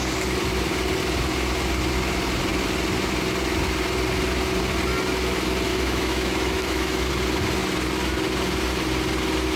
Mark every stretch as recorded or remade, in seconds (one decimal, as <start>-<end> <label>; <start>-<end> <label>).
0.0-5.7 recorded; 5.7-7.1 remade; 7.1-9.6 recorded